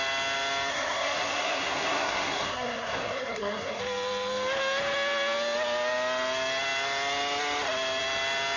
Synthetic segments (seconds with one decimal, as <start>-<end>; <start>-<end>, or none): 0.7-3.8